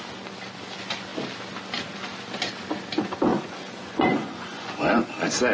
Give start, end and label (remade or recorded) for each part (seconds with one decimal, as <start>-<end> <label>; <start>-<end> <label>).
0.0-3.3 recorded; 3.3-4.9 remade; 4.9-5.5 recorded